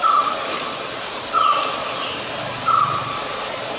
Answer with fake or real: real